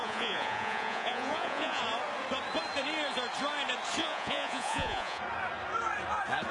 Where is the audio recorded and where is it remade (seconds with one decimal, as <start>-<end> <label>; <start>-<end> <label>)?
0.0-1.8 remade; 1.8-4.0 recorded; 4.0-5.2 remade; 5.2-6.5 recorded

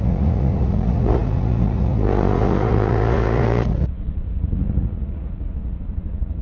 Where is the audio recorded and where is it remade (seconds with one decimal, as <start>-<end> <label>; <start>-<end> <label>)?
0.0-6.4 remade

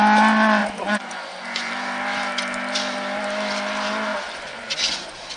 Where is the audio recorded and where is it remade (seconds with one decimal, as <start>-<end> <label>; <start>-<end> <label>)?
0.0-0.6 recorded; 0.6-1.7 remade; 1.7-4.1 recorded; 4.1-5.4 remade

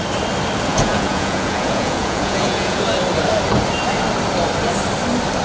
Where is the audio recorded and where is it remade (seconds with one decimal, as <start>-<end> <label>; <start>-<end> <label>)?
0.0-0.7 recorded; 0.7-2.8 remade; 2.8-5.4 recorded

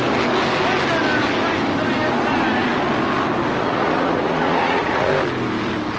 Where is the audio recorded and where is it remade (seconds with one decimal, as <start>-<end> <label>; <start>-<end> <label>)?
0.0-3.6 recorded; 3.6-5.1 remade; 5.1-6.0 recorded